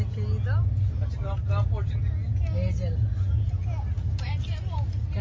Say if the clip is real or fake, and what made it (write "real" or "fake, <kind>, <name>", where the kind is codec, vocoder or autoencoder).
real